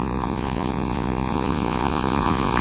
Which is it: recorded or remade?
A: remade